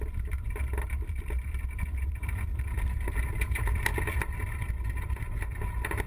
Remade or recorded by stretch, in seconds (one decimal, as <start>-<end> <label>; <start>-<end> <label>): 0.0-2.5 remade; 2.5-3.4 recorded; 3.4-6.1 remade